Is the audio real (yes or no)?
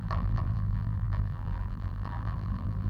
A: no